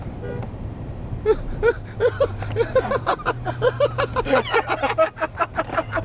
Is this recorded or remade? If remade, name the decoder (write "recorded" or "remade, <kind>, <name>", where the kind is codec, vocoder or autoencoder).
recorded